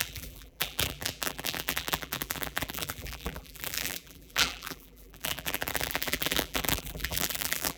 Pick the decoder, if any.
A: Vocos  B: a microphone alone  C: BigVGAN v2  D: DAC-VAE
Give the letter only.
C